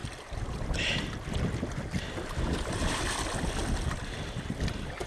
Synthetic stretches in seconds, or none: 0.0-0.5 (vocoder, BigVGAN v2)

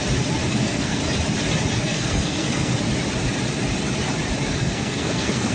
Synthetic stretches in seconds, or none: 0.5-1.0 (codec, SNAC); 1.8-2.7; 4.5-5.5

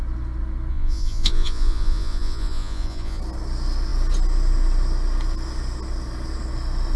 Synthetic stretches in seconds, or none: 0.7-3.2 (vocoder, Vocos)

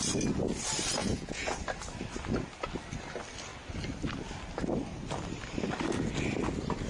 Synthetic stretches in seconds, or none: 1.0-1.6 (vocoder, Vocos)

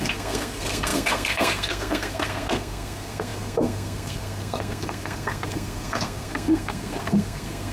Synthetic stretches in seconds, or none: 0.0-7.7 (codec, SNAC)